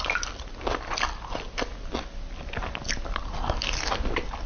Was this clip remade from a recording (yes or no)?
no